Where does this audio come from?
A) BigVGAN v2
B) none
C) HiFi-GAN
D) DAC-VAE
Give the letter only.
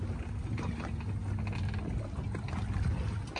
B